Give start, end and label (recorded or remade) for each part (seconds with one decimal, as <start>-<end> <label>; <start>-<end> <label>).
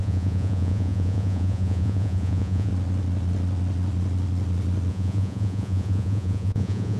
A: 0.0-2.7 remade; 2.7-4.9 recorded; 4.9-7.0 remade